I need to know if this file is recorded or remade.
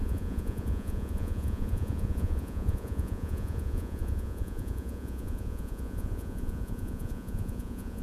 remade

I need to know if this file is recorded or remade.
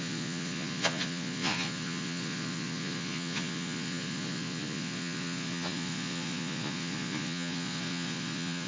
remade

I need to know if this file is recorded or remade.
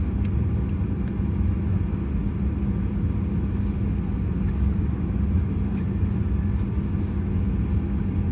recorded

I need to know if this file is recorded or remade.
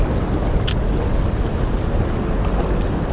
recorded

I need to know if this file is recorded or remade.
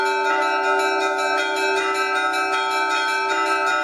recorded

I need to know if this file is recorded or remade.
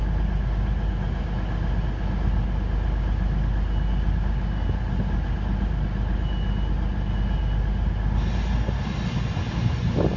recorded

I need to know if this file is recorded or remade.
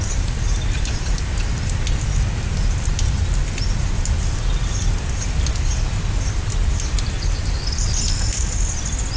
recorded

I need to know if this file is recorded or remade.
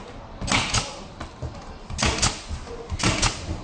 recorded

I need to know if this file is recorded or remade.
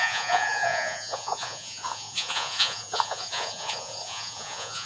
remade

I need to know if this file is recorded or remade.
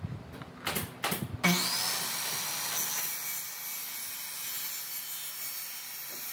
recorded